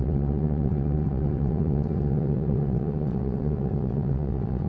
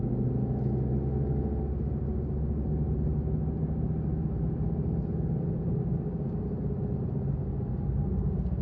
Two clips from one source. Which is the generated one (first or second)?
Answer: first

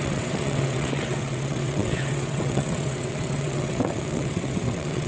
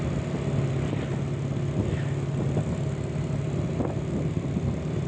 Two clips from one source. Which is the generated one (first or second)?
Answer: first